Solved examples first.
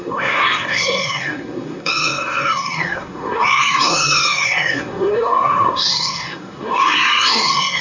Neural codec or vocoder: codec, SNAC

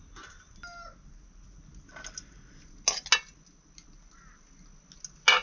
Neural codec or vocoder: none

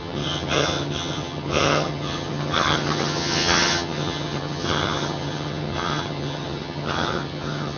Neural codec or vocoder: vocoder, HiFi-GAN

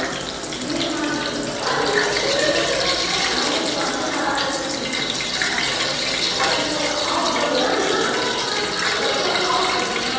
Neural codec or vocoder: none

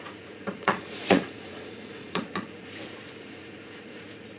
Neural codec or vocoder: vocoder, Vocos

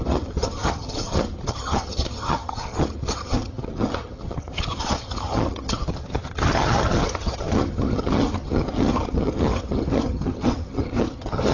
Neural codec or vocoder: vocoder, HiFi-GAN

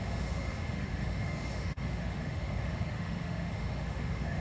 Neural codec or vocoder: autoencoder, DAC-VAE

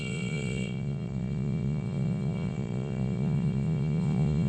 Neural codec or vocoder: vocoder, Vocos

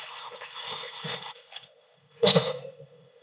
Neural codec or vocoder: codec, ZipCodec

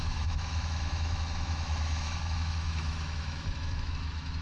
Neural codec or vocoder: autoencoder, DAC-VAE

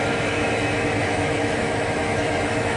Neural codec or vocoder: autoencoder, DAC-VAE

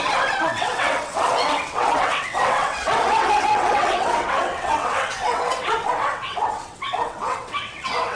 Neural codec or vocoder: vocoder, WaveNeXt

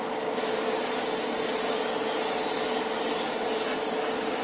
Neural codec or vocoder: none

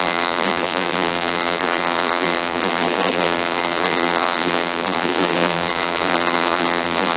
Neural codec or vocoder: vocoder, BigVGAN v2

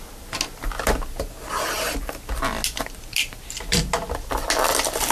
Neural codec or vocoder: none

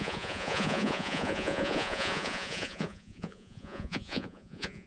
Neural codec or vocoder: vocoder, Vocos